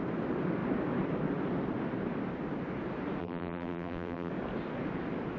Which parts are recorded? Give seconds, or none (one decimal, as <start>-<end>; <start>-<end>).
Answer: 0.0-3.2; 4.3-5.4